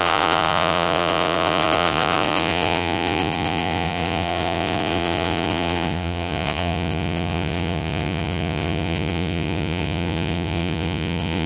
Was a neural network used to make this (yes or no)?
yes